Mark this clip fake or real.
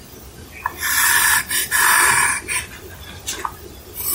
real